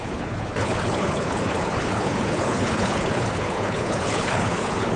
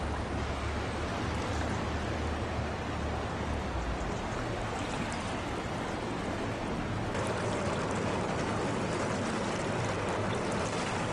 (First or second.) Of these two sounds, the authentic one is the second